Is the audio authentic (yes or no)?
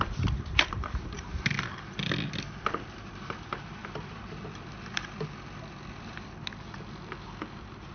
no